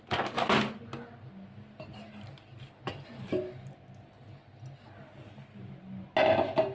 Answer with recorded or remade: recorded